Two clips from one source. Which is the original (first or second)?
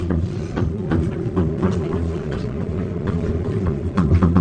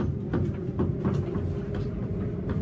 second